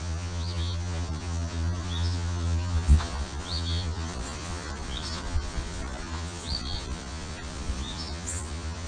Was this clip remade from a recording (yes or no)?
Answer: yes